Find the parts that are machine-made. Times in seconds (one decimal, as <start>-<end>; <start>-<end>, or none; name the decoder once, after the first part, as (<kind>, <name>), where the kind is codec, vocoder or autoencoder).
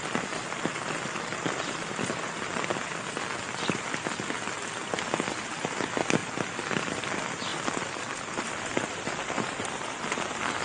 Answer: none